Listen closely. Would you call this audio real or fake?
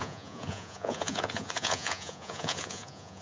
fake